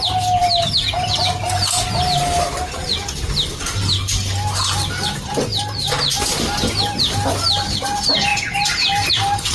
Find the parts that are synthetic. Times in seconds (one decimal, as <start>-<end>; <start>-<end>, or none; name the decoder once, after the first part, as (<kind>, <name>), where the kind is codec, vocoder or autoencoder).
none